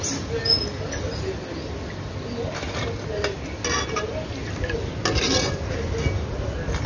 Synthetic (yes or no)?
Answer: no